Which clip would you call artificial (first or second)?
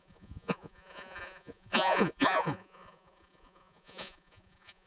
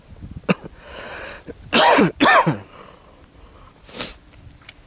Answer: first